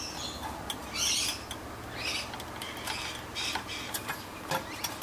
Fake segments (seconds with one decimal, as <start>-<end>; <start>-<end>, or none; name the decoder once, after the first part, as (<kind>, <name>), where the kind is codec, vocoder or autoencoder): none